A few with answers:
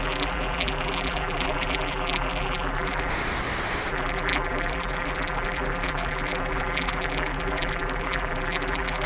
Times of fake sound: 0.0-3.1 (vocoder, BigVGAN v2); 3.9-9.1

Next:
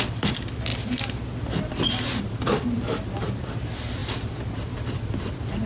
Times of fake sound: 0.0-0.7 (vocoder, BigVGAN v2); 2.2-5.7

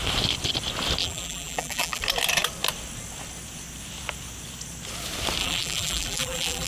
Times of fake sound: 1.0-2.0 (vocoder, BigVGAN v2); 5.4-6.7

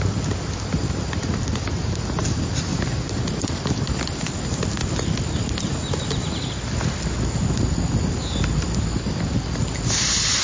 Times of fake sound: 2.7-3.2 (vocoder, BigVGAN v2)

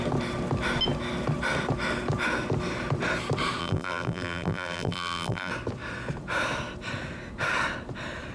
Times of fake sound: 3.6-5.5 (vocoder, BigVGAN v2)

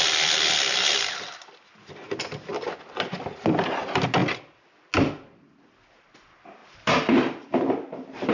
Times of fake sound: 6.6-8.3 (vocoder, BigVGAN v2)

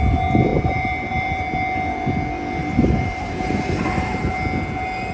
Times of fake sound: 0.5-1.5 (vocoder, BigVGAN v2); 2.6-4.3

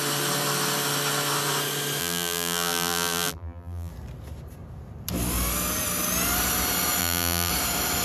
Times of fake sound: 2.0-3.9 (vocoder, BigVGAN v2); 7.0-7.5